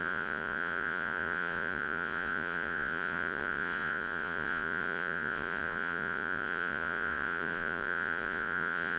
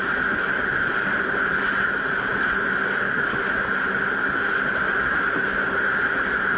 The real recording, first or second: second